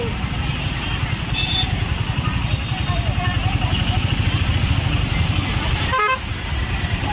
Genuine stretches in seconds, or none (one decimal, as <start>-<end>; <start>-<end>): 1.4-5.7